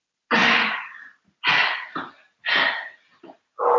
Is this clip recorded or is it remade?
recorded